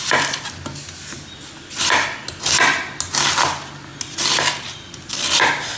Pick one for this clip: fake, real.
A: real